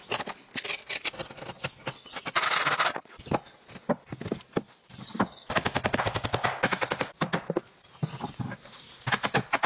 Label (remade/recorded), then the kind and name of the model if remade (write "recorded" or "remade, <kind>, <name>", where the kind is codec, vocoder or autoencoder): recorded